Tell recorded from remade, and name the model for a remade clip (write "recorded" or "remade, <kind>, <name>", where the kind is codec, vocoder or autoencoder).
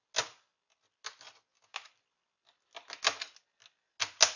recorded